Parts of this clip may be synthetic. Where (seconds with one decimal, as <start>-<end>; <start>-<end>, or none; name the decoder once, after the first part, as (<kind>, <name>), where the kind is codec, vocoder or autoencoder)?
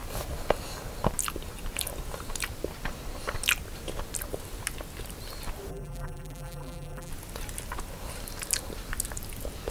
5.7-7.1 (vocoder, BigVGAN v2)